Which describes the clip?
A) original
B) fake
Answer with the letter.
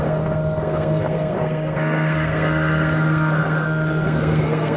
B